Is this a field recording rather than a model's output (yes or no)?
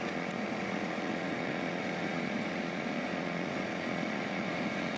no